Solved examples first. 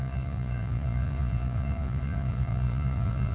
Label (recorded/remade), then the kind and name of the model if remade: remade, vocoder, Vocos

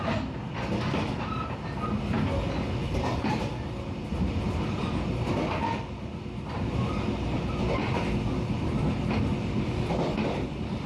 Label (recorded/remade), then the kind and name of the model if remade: recorded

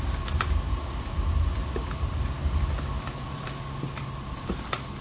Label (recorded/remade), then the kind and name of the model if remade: recorded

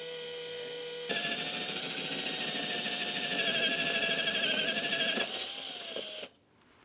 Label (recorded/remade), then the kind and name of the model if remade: recorded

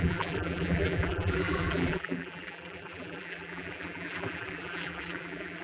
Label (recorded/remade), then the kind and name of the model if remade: remade, vocoder, BigVGAN v2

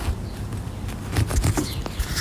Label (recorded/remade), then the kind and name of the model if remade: recorded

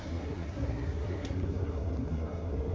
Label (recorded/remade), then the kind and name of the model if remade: remade, codec, SNAC